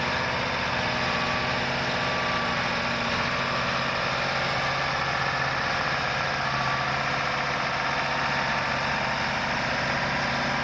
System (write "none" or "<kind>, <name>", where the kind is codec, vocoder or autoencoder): none